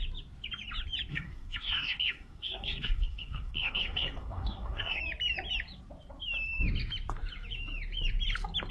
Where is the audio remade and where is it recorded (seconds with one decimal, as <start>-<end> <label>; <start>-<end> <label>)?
0.0-1.1 recorded; 1.1-5.0 remade; 5.0-8.7 recorded